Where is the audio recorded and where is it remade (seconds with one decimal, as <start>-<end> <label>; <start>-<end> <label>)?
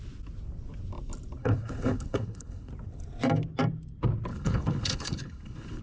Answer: 0.0-1.4 recorded; 1.4-2.7 remade; 2.7-4.3 recorded; 4.3-5.8 remade